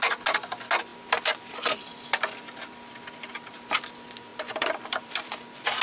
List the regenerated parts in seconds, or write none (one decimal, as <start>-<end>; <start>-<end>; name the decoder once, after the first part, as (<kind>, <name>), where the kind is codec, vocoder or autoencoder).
4.3-5.3 (vocoder, BigVGAN v2)